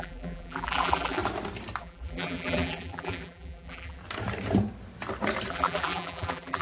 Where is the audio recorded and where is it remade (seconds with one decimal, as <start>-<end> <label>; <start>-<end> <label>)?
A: 0.0-1.2 remade; 1.2-1.8 recorded; 1.8-4.0 remade; 4.0-5.5 recorded; 5.5-6.6 remade